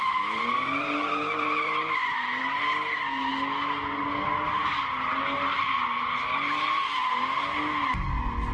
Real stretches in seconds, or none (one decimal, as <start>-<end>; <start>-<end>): 2.4-8.5